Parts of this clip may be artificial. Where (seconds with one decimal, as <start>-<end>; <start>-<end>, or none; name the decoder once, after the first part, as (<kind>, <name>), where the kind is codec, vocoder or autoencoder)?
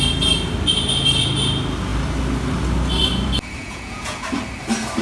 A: 3.6-4.2 (vocoder, Vocos)